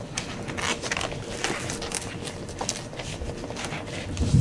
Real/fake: real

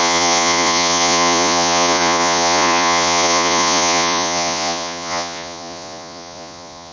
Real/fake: fake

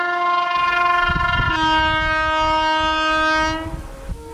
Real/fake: real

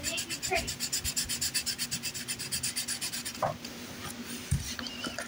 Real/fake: real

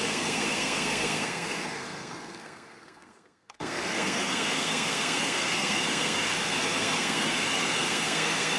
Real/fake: fake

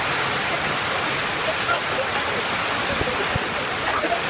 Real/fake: real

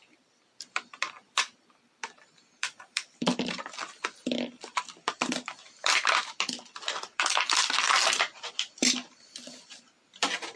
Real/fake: fake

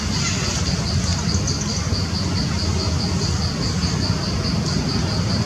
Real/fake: real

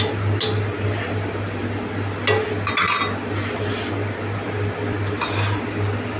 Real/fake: real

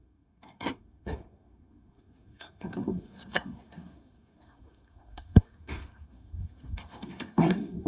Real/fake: fake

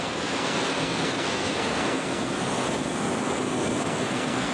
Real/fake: fake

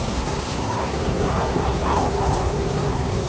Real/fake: fake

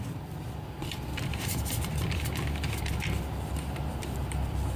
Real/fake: fake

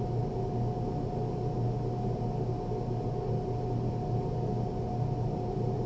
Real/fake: real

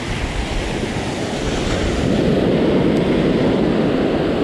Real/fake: real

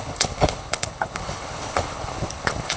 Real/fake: fake